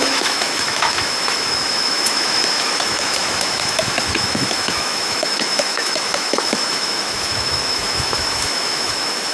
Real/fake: fake